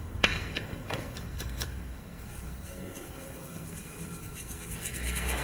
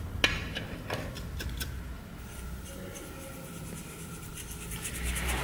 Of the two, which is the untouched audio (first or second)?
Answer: second